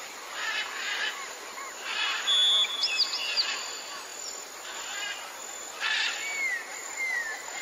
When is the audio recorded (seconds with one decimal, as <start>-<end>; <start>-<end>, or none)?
0.0-4.1; 4.6-6.7